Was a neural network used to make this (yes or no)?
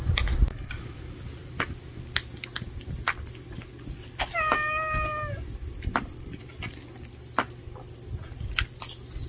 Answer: no